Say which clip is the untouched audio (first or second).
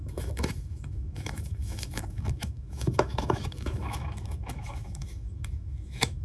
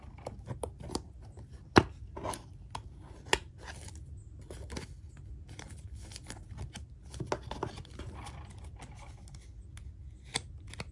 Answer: second